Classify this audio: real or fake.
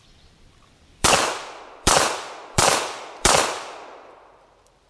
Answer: fake